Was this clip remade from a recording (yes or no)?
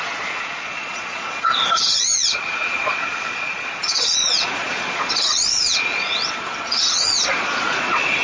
yes